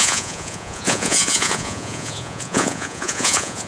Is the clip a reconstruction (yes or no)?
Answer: yes